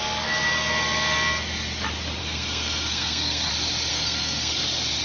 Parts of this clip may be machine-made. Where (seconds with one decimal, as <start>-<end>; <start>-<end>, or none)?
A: 2.2-3.5; 3.9-4.6